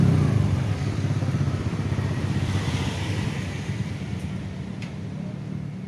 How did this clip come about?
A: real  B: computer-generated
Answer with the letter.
B